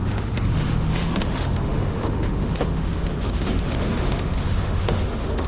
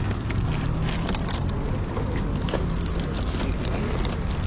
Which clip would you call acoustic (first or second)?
second